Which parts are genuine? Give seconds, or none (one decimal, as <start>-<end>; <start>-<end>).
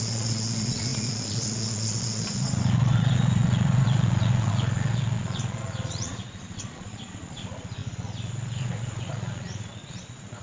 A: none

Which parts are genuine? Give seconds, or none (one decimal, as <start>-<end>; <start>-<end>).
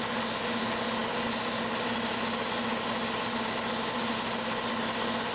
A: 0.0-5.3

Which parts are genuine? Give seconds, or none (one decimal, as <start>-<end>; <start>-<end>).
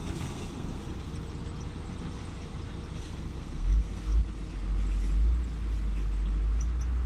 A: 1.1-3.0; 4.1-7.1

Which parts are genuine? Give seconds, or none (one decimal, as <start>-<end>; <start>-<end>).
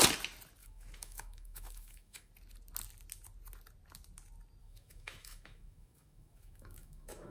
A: 0.0-0.6; 2.3-4.6